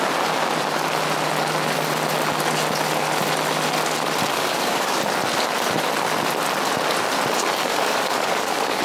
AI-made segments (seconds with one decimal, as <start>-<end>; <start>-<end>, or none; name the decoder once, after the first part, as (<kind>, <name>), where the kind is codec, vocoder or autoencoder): 4.3-5.0 (codec, DAC); 7.7-8.8